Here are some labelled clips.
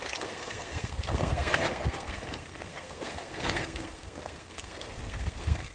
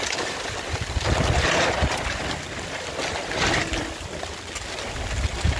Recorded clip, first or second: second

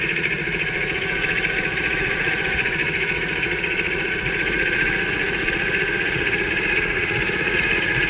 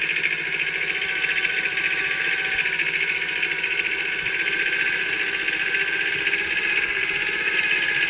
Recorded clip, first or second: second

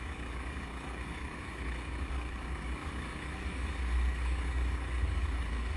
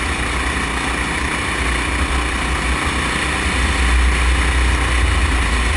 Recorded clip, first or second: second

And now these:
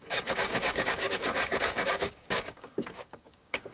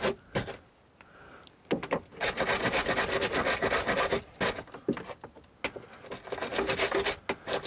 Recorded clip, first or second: second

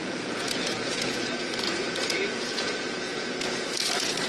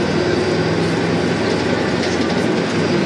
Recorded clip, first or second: second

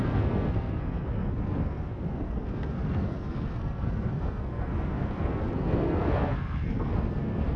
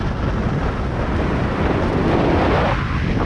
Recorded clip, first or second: second